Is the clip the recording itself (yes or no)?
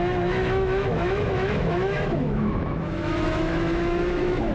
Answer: no